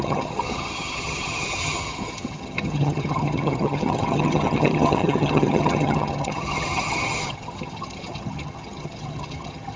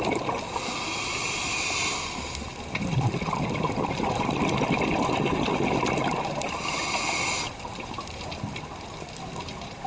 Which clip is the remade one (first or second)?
first